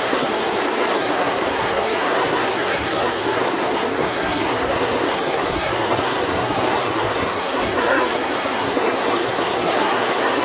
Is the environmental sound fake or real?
fake